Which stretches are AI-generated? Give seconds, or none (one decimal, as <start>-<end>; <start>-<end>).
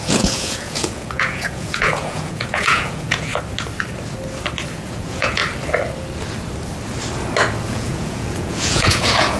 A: 0.0-3.3; 4.7-5.4; 7.7-9.4